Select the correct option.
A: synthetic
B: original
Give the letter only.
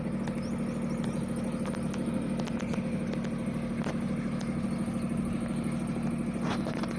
B